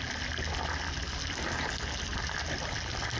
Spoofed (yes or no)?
no